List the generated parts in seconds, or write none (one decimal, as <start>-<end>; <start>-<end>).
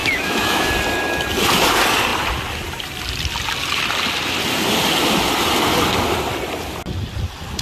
0.0-0.7